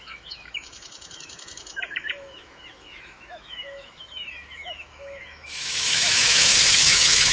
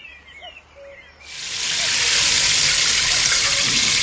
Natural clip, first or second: second